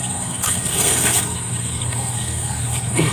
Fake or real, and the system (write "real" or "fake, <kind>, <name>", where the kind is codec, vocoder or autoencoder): fake, codec, SNAC